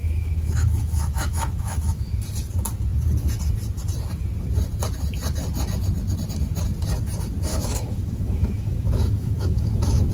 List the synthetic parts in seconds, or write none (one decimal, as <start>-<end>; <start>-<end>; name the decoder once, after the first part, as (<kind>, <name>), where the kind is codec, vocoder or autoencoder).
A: 0.0-2.1 (autoencoder, DAC-VAE); 7.5-10.1

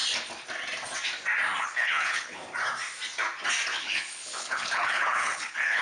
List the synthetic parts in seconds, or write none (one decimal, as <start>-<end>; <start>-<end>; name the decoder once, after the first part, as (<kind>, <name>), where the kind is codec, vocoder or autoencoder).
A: 1.6-2.4 (codec, HILCodec); 3.8-5.8

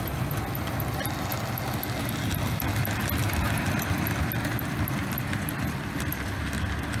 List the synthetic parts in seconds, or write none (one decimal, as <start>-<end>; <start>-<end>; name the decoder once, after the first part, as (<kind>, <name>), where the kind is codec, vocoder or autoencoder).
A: none